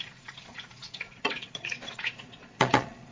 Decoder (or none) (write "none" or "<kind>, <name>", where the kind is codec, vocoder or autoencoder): vocoder, Vocos